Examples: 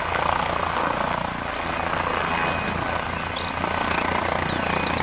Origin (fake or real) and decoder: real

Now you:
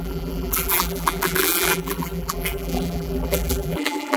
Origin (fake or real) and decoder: fake, vocoder, BigVGAN v2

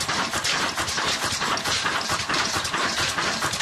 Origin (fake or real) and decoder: fake, vocoder, BigVGAN v2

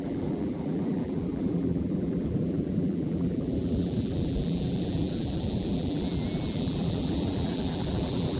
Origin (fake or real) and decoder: fake, vocoder, BigVGAN v2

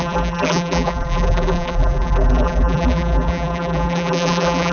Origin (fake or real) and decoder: fake, vocoder, BigVGAN v2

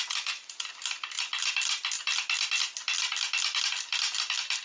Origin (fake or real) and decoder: real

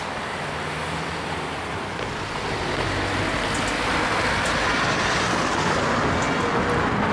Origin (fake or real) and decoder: real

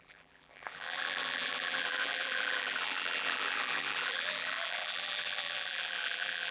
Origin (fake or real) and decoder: fake, vocoder, BigVGAN v2